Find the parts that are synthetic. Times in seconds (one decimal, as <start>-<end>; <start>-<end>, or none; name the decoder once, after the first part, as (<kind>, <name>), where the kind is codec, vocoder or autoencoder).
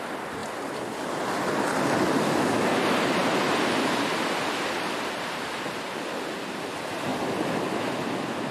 none